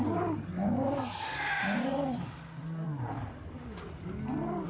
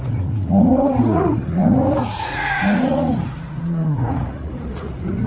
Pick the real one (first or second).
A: first